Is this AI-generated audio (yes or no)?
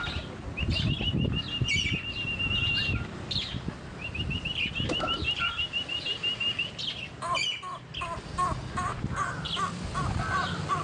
no